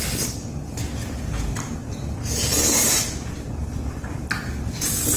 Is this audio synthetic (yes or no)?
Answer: no